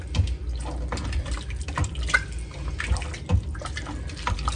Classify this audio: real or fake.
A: real